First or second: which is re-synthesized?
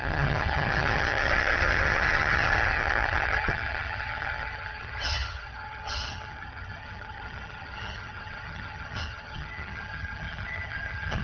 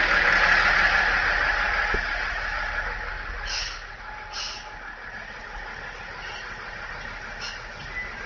first